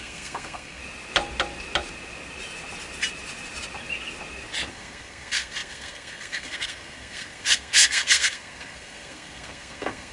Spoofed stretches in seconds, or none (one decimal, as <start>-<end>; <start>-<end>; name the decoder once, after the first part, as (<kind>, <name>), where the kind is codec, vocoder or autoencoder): 0.0-0.8 (codec, SNAC); 4.7-10.1